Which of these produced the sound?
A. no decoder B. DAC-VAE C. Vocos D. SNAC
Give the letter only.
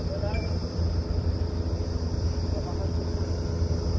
A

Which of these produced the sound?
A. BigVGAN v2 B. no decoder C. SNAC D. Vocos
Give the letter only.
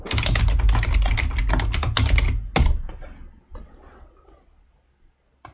B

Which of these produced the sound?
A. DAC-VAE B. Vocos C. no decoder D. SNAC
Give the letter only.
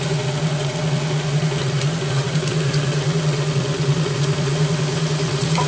B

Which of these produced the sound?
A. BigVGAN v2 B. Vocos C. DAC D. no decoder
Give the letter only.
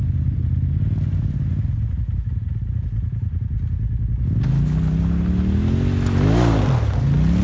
D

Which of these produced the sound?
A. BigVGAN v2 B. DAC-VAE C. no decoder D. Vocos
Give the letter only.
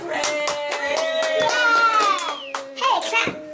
C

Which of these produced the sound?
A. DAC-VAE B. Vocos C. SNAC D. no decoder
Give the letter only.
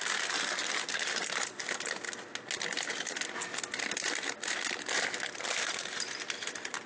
D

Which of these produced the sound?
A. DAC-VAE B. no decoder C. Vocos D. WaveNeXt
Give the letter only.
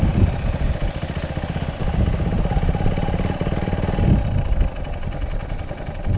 B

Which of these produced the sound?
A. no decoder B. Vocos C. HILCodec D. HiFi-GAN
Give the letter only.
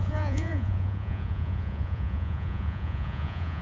B